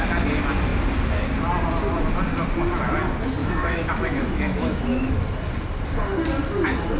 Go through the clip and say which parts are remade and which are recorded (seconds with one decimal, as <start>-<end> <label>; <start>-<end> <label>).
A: 0.0-3.4 recorded; 3.4-5.1 remade; 5.1-7.0 recorded